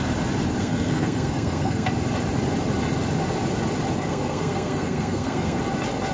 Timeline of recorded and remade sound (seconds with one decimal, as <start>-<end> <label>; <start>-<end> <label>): 0.0-0.6 recorded; 0.6-1.9 remade; 1.9-4.1 recorded; 4.1-5.6 remade; 5.6-6.1 recorded